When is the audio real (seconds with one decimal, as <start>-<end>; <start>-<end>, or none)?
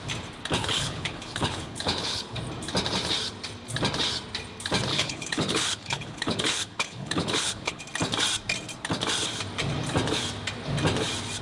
0.0-0.6; 2.4-4.9; 7.8-11.4